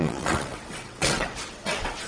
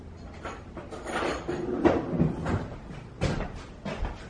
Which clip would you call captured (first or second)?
second